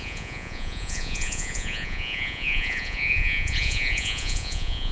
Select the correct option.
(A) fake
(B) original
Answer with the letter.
A